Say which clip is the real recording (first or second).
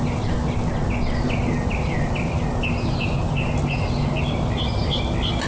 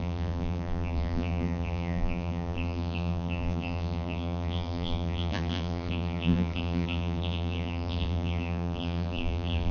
first